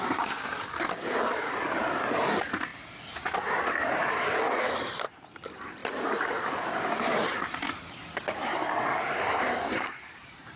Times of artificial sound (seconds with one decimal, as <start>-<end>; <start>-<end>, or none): 0.0-2.7; 4.1-8.6; 9.4-10.6